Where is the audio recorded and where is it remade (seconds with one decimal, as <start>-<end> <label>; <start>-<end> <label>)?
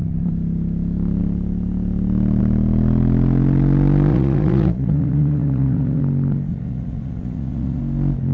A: 0.0-4.1 recorded; 4.1-6.0 remade; 6.0-6.5 recorded; 6.5-7.8 remade; 7.8-8.3 recorded